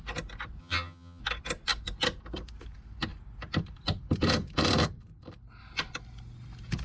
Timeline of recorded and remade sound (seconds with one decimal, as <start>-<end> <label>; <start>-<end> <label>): 0.0-0.6 recorded; 0.6-1.2 remade; 1.2-6.8 recorded